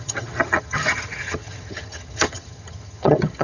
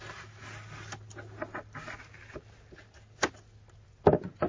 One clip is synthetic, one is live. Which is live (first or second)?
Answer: second